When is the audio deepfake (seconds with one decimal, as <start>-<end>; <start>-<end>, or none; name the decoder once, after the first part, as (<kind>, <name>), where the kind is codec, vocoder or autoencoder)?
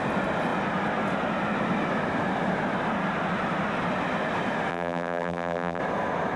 4.7-5.8 (vocoder, BigVGAN v2)